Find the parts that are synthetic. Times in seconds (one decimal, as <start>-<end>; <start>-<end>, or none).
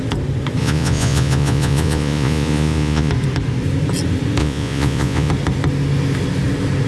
0.6-3.1; 4.4-5.3